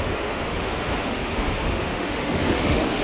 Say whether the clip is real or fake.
fake